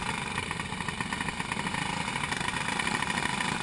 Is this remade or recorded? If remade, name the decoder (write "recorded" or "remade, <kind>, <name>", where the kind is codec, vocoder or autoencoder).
recorded